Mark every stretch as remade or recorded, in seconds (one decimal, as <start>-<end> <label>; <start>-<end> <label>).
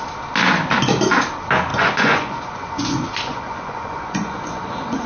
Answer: 0.0-1.7 recorded; 1.7-5.1 remade